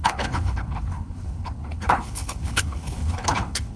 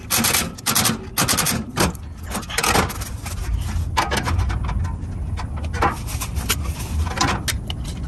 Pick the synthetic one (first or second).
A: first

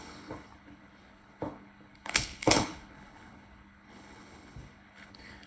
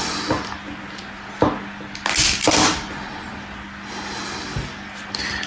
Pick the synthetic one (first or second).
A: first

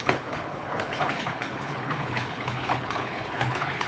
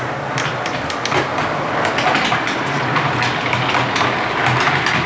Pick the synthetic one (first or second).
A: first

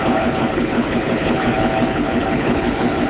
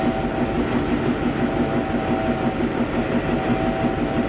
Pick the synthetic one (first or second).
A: first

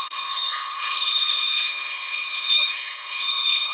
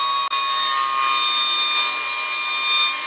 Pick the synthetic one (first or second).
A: first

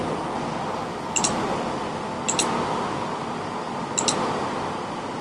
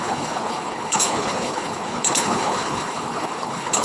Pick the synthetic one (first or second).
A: second